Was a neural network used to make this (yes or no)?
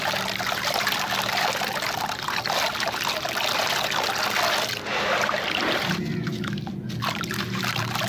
no